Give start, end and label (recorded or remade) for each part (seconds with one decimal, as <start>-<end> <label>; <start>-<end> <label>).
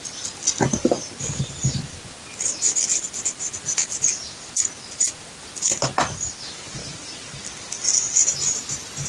0.0-5.7 recorded; 5.7-6.2 remade; 6.2-6.8 recorded; 6.8-7.4 remade; 7.4-9.1 recorded